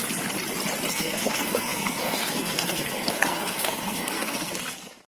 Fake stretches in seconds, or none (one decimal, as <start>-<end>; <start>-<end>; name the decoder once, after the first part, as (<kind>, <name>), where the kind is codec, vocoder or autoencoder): 0.9-5.1 (codec, SNAC)